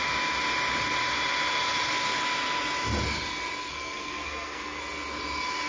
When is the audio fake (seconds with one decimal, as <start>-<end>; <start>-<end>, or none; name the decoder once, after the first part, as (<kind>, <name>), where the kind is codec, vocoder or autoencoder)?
3.6-4.8 (codec, SNAC)